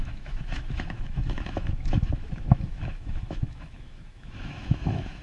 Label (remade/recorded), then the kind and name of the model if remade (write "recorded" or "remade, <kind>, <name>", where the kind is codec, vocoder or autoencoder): remade, autoencoder, DAC-VAE